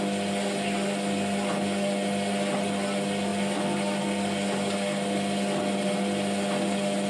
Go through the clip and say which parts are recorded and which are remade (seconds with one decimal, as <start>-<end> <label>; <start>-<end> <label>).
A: 0.0-7.1 recorded